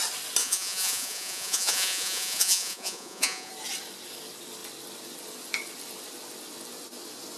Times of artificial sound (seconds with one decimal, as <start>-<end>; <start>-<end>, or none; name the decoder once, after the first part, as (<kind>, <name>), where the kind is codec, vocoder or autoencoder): 0.4-3.5 (vocoder, Vocos)